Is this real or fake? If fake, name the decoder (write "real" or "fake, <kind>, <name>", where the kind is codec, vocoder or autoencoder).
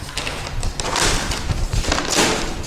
real